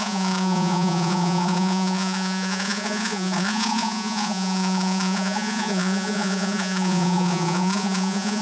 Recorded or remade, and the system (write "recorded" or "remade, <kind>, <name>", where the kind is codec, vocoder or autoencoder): remade, vocoder, Vocos